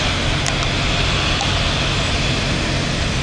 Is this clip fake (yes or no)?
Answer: no